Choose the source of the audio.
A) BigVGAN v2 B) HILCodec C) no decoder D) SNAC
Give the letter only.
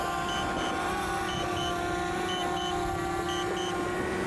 C